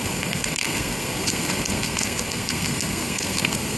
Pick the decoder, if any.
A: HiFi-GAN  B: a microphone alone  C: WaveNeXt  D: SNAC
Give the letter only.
D